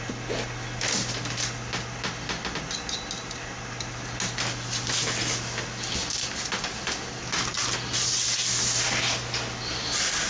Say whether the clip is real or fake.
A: real